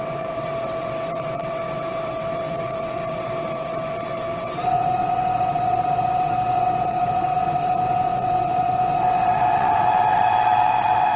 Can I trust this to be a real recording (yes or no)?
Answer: no